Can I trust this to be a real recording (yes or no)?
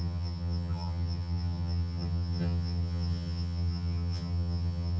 no